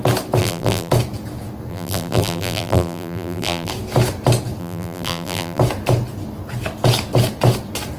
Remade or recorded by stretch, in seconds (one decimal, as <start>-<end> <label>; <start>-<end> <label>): 0.0-0.4 recorded; 0.4-0.9 remade; 0.9-1.7 recorded; 1.7-3.7 remade; 3.7-4.6 recorded; 4.6-5.6 remade; 5.6-8.0 recorded